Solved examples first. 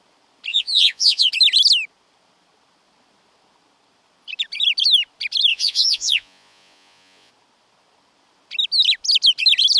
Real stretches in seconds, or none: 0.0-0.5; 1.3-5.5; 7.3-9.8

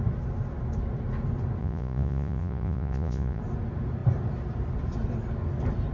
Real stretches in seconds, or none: 0.0-1.6; 3.4-5.9

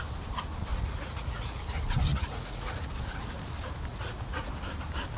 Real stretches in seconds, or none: 0.0-0.7; 1.6-2.1; 2.9-3.9; 4.5-5.2

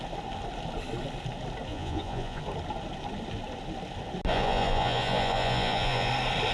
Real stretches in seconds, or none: 0.0-1.7; 2.4-4.3; 6.1-6.5

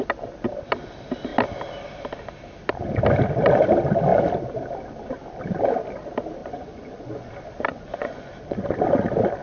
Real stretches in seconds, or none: 0.0-6.4; 7.3-7.7; 8.3-9.4

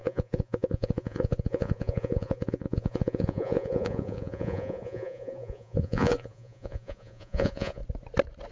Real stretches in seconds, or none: 7.8-8.5

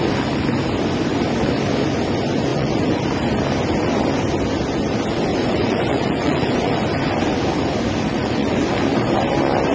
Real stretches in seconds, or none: 0.0-2.5; 3.0-5.3; 6.7-8.1; 8.7-9.7